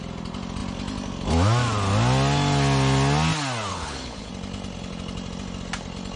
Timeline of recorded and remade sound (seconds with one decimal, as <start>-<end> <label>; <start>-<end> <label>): 0.0-3.7 recorded; 3.7-4.3 remade; 4.3-6.2 recorded